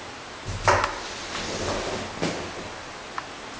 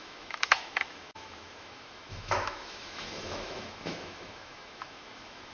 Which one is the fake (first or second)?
second